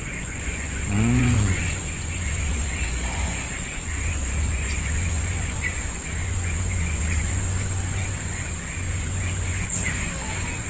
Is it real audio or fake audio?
fake